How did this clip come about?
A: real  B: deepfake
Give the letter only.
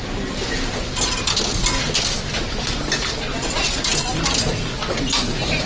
A